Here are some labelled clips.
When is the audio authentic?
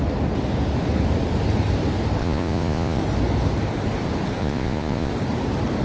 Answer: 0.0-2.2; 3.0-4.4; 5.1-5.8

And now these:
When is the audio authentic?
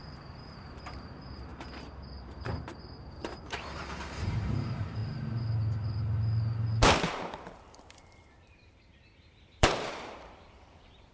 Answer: 5.0-7.1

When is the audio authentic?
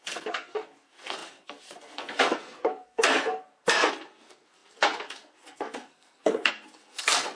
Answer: none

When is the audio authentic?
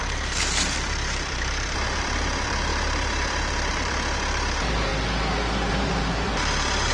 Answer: 4.9-5.7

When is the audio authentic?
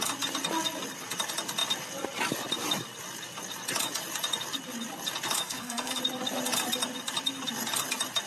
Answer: 0.0-5.4; 6.0-8.3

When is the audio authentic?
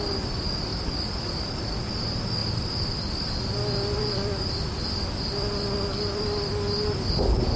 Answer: 0.0-0.7; 1.9-7.6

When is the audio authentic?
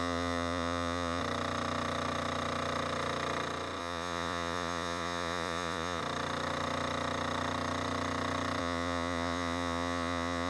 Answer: 1.2-3.8; 6.0-8.6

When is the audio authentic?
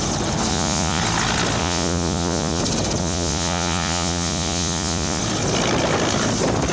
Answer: 0.0-0.5; 1.0-1.6; 2.6-3.0; 5.2-6.7